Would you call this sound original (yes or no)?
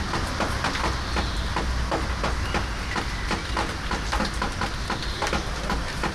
yes